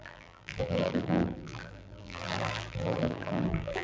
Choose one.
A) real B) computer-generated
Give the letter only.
B